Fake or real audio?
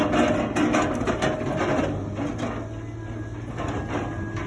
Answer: real